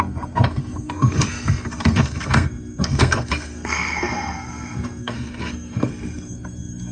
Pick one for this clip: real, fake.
fake